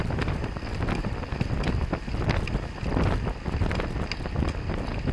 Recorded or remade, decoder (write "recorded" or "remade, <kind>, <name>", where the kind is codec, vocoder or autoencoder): recorded